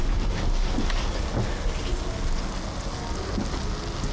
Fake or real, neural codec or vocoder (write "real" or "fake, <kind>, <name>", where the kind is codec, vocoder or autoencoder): real